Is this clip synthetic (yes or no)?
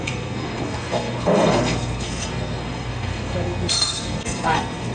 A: yes